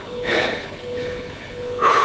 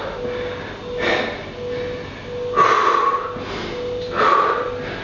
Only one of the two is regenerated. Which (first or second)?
first